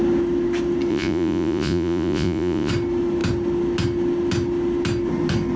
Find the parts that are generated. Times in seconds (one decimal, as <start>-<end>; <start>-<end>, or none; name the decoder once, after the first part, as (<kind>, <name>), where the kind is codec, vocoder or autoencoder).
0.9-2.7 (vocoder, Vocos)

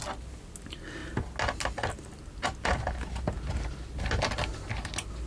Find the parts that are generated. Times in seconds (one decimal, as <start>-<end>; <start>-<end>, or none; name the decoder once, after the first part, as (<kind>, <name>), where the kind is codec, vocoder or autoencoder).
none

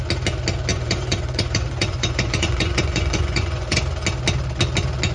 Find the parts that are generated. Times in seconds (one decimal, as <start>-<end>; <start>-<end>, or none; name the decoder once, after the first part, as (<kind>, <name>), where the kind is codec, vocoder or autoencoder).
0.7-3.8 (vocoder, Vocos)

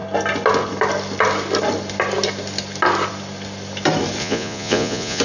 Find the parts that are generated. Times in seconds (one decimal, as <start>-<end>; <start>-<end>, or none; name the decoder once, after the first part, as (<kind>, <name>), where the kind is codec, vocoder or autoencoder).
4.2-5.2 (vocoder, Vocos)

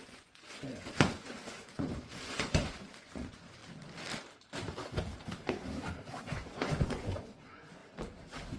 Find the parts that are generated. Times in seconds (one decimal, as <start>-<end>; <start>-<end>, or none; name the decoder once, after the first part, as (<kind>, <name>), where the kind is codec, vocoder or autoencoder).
0.0-3.6 (vocoder, Vocos); 6.2-7.8

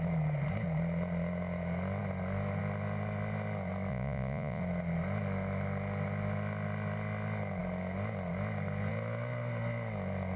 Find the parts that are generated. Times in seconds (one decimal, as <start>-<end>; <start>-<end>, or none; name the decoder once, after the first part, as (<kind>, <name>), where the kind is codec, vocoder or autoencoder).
3.9-4.6 (vocoder, Vocos)

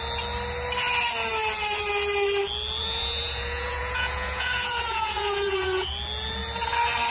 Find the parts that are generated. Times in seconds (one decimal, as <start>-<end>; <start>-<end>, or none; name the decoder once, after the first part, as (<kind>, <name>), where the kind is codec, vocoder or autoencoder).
2.8-5.9 (vocoder, Vocos)